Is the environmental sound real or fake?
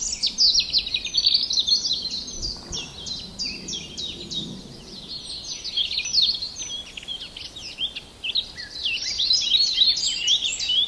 real